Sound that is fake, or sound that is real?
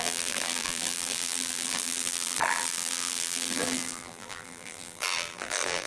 fake